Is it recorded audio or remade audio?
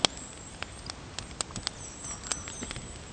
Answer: recorded